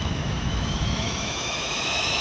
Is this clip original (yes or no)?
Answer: no